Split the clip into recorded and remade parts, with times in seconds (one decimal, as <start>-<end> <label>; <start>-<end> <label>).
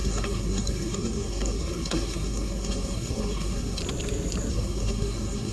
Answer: 0.0-3.8 remade; 3.8-4.5 recorded; 4.5-5.5 remade